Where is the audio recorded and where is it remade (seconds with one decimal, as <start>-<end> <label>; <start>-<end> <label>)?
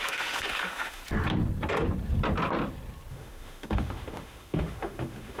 0.0-1.0 remade; 1.0-3.1 recorded; 3.1-5.4 remade